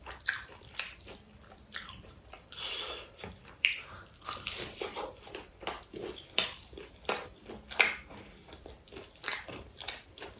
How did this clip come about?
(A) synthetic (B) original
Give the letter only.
A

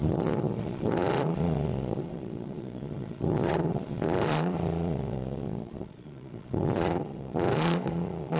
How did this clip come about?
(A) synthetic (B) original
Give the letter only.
A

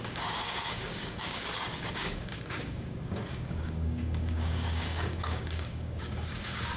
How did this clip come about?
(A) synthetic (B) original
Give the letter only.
A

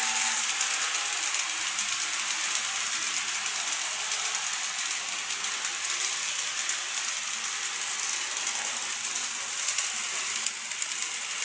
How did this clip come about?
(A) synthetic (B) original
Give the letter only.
B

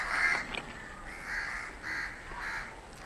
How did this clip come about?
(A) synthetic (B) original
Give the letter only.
B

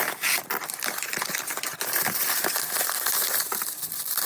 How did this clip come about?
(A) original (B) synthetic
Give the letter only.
A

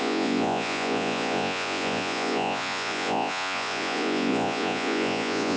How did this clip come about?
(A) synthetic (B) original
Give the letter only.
A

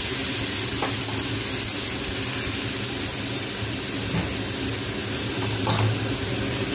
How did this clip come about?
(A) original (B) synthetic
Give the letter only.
A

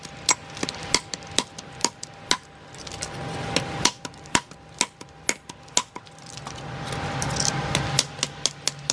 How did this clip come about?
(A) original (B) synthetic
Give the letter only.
A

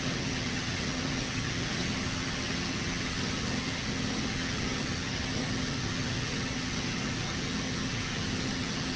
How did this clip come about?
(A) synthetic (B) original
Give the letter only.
A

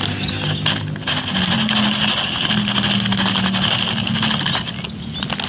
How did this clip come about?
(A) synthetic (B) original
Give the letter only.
B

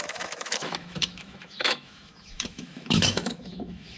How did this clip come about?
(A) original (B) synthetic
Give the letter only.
B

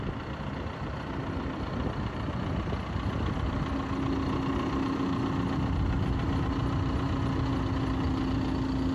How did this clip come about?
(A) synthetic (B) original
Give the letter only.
B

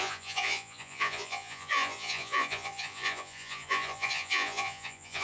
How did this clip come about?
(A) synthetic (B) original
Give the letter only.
A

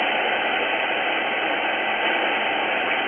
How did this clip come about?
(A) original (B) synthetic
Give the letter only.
A